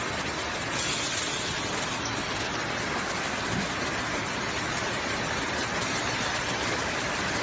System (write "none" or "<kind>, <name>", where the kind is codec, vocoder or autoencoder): none